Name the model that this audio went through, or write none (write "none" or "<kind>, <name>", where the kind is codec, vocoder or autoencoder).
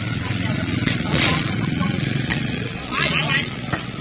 vocoder, Vocos